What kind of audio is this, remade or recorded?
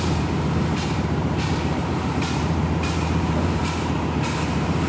remade